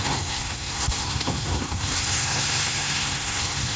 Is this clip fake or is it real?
fake